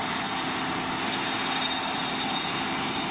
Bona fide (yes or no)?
yes